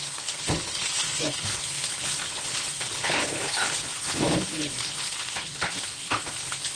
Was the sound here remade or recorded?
remade